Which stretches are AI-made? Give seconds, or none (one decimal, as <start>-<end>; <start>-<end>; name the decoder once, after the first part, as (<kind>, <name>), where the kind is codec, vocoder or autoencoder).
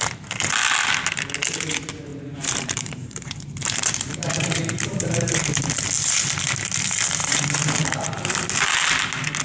2.1-5.6 (vocoder, BigVGAN v2); 7.2-7.8